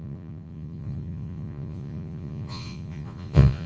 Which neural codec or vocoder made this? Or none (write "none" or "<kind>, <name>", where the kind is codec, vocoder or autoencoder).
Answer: vocoder, Vocos